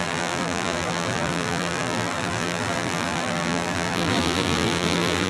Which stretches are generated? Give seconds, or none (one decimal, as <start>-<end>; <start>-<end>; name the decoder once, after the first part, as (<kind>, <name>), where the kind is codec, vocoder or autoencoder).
0.0-5.3 (vocoder, BigVGAN v2)

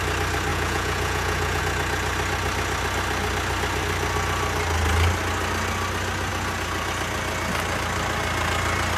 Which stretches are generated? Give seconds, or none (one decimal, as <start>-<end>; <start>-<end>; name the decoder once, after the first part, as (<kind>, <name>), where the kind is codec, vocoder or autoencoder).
0.5-1.6 (vocoder, Vocos)

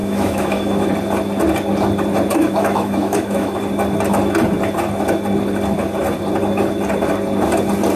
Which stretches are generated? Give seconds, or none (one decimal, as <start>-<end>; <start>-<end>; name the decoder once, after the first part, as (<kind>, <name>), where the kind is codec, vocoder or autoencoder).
0.0-0.9 (autoencoder, DAC-VAE); 2.3-3.6

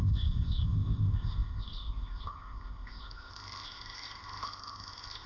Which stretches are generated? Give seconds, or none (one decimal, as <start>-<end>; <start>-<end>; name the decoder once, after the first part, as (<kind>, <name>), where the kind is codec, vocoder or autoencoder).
0.0-5.3 (codec, ZipCodec)

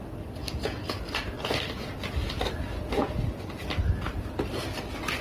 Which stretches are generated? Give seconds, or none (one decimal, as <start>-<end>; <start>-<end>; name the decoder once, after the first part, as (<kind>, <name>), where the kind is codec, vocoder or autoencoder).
none

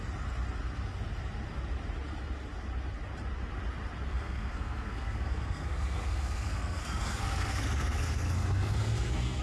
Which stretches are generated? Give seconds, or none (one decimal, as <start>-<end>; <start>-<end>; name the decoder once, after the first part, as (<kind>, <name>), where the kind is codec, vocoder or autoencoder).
4.1-9.4 (codec, SNAC)